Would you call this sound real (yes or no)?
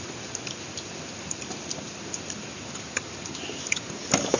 yes